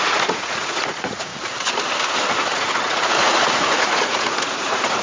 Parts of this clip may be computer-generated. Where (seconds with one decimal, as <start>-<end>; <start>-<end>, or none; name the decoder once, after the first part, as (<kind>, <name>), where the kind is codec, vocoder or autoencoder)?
0.0-1.3 (vocoder, Vocos); 2.3-5.0